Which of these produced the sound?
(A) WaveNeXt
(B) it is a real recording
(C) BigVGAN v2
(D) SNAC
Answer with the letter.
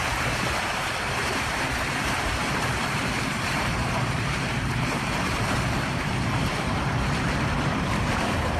C